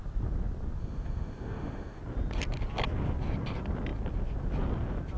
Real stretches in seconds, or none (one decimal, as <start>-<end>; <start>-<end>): 0.0-0.8; 2.0-5.2